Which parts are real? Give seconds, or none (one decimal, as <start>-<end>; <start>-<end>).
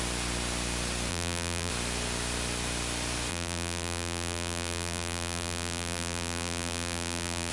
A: 0.0-1.1; 1.7-3.3